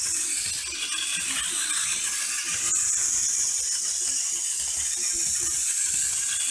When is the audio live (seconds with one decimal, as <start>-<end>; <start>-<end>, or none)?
0.0-6.5